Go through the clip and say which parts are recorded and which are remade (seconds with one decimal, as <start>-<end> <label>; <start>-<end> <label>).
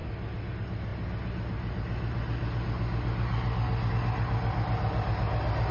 0.0-5.7 recorded